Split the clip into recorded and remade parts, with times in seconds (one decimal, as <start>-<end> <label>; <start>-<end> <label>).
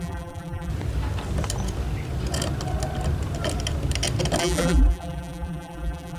0.0-0.7 remade; 0.7-4.4 recorded; 4.4-6.2 remade